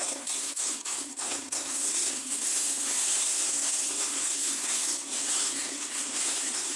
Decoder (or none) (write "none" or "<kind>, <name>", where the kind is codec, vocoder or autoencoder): codec, SNAC